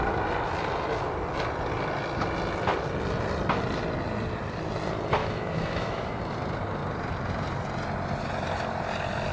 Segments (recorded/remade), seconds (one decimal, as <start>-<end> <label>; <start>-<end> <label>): 0.0-5.2 recorded; 5.2-6.2 remade; 6.2-9.3 recorded